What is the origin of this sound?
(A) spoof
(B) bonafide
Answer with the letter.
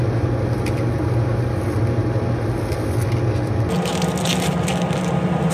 B